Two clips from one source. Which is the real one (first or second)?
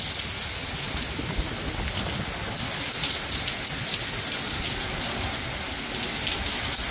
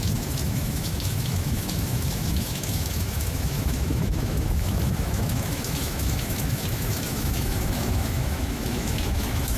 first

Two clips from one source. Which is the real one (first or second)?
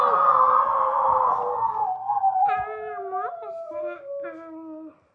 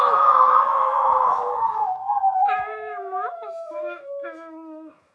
first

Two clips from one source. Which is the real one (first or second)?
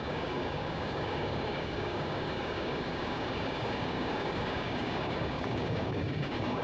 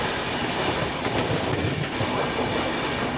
second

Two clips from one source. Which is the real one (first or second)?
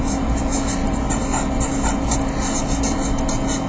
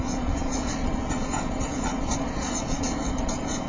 first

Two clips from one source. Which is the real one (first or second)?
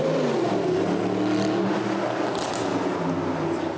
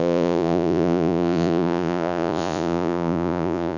first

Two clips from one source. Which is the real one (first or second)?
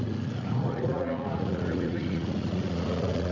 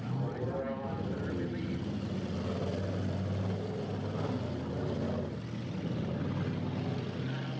second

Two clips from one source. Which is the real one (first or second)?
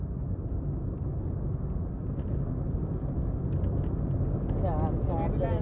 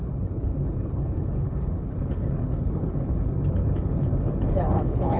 first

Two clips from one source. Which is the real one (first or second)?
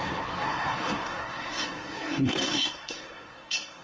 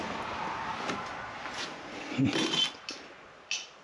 second